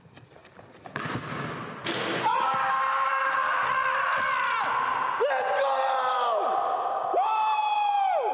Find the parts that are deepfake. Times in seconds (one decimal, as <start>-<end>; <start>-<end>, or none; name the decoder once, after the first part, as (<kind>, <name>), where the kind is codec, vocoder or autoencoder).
none